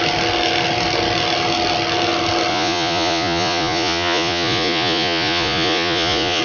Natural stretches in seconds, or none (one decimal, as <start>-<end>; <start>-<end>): 0.0-2.5